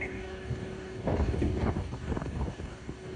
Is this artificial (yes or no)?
yes